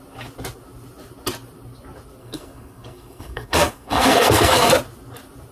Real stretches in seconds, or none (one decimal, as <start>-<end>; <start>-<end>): 0.0-2.2; 4.7-5.5